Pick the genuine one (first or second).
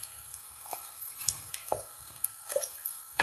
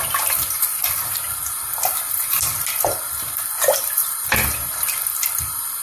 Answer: second